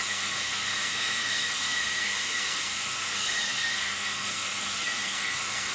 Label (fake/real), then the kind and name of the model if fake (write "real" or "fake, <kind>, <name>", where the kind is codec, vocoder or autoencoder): fake, codec, SNAC